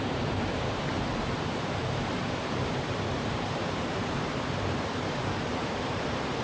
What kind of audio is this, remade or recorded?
remade